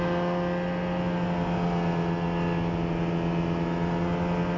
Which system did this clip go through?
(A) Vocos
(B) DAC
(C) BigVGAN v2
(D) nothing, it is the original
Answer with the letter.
D